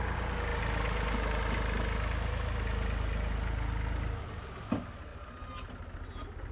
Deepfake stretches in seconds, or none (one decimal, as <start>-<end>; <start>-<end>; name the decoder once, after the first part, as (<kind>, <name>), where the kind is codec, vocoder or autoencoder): none